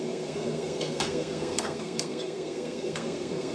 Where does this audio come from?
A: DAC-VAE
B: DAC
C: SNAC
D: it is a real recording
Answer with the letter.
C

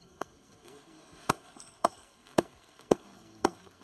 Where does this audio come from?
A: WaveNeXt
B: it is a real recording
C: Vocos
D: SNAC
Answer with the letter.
D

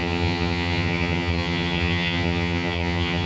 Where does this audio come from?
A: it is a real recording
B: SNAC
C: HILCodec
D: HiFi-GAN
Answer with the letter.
D